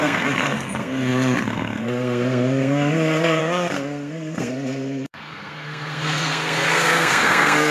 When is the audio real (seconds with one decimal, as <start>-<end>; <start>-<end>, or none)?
none